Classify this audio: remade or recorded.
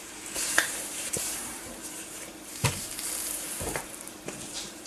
remade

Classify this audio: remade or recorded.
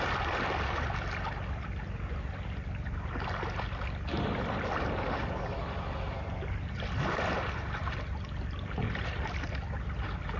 recorded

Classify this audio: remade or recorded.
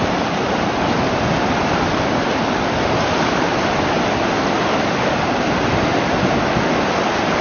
recorded